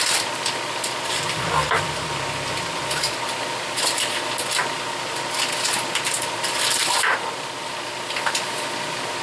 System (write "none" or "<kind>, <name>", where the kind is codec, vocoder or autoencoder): vocoder, BigVGAN v2